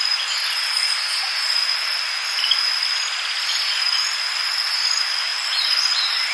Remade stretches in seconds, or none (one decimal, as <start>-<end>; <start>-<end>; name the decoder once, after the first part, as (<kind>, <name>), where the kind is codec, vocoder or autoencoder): none